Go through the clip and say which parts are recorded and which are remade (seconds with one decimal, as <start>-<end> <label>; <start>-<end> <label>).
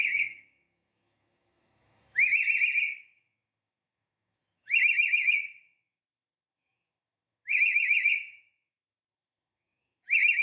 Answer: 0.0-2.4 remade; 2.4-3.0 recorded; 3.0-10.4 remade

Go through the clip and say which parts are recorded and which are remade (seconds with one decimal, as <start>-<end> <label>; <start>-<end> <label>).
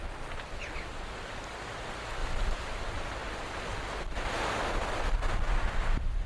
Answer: 0.0-2.2 recorded; 2.2-2.7 remade; 2.7-6.3 recorded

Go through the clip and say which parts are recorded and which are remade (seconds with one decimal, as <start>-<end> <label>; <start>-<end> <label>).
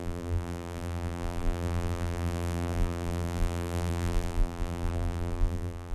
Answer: 0.0-5.9 remade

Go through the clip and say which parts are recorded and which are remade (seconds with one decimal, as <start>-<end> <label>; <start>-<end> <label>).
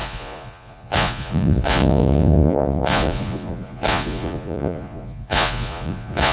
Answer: 0.0-6.3 remade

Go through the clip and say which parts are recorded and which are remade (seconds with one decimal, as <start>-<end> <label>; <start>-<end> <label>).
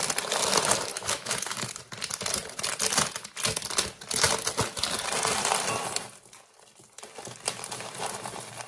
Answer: 0.0-0.9 recorded; 0.9-1.7 remade; 1.7-8.7 recorded